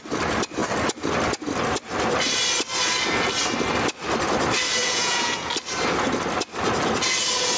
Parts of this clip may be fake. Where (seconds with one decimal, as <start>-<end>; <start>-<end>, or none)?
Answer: 4.8-5.5